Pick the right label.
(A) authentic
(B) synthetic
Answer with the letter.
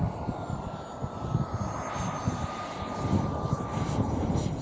A